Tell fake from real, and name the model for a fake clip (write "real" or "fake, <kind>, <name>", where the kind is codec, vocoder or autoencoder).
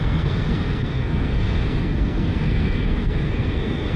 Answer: fake, codec, SNAC